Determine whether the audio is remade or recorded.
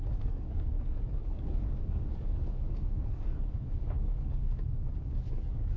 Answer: remade